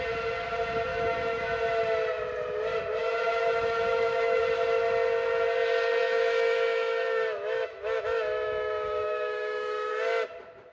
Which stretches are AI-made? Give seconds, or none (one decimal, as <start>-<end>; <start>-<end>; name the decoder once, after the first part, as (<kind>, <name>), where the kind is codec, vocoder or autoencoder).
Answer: 0.9-1.6 (autoencoder, DAC-VAE); 3.0-4.4; 6.0-9.9